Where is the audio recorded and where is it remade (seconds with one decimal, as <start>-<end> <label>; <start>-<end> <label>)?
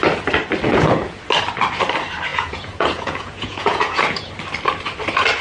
0.0-0.7 recorded; 0.7-1.2 remade; 1.2-2.3 recorded; 2.3-4.3 remade; 4.3-5.4 recorded